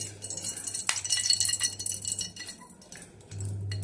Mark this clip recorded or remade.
recorded